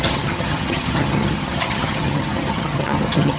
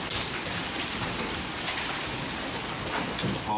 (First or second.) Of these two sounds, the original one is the second